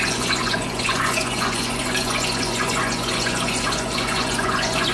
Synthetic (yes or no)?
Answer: yes